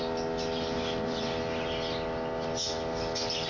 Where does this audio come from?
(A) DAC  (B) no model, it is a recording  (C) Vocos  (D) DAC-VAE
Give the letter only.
B